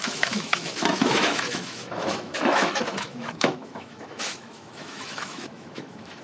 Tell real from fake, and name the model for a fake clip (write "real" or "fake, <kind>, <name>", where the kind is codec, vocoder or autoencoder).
fake, autoencoder, DAC-VAE